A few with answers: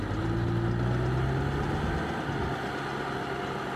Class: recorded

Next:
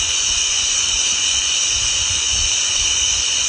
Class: remade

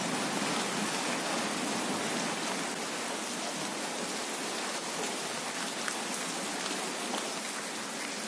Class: recorded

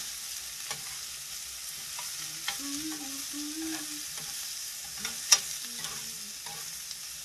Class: recorded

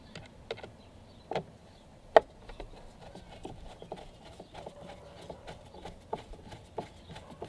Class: recorded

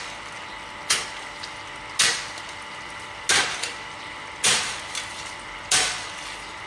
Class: recorded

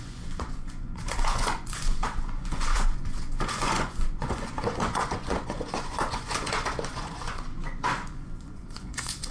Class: remade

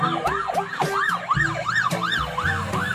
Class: recorded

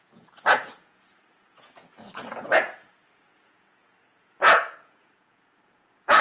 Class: remade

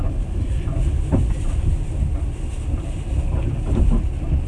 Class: recorded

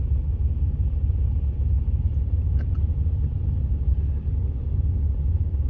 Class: recorded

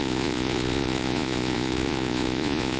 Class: remade